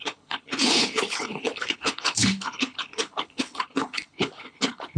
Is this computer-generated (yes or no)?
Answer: yes